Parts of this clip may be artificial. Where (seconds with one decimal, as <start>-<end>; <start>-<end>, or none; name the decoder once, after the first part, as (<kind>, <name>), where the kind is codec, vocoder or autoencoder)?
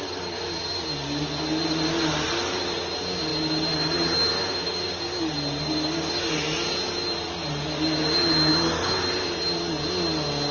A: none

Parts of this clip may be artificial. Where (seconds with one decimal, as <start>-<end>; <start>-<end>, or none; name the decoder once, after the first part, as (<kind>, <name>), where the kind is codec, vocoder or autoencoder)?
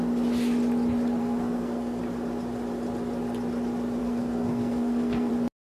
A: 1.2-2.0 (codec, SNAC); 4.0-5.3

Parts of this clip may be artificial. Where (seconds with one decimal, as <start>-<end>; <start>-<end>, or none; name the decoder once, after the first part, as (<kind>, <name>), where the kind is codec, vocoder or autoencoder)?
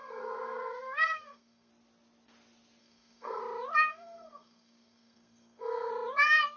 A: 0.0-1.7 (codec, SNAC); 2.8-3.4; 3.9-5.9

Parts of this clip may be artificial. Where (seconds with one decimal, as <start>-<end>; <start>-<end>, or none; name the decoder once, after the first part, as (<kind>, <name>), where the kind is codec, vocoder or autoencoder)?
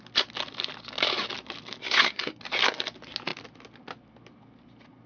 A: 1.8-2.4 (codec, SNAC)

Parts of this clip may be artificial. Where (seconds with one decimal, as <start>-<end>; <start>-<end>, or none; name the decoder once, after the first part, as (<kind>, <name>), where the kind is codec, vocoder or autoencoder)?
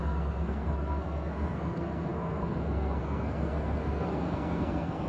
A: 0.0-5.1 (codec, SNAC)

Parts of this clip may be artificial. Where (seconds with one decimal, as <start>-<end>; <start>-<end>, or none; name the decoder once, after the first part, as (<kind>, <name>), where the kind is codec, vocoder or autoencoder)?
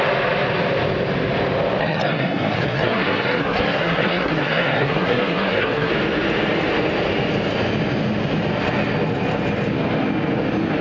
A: 1.8-5.9 (codec, SNAC)